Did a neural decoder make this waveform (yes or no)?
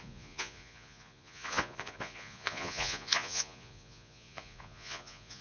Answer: yes